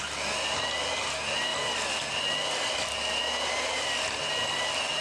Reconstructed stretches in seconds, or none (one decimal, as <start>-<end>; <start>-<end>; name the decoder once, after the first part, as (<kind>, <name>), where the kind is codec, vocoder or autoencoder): none